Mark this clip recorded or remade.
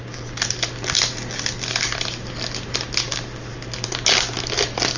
recorded